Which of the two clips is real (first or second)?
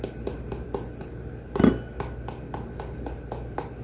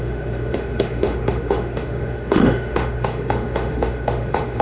first